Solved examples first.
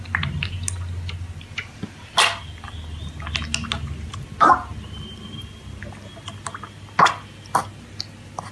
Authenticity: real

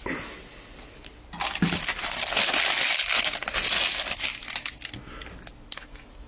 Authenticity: real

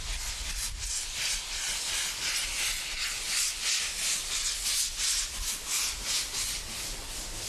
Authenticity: real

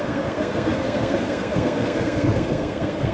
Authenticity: fake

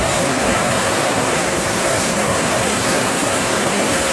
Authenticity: fake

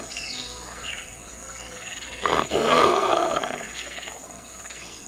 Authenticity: fake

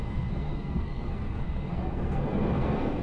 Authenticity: fake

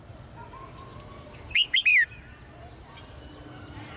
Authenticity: real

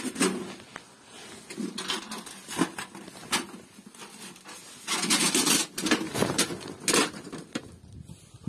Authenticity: real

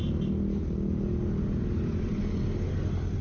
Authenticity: real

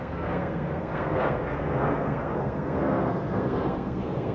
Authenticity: fake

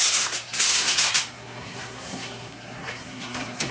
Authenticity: fake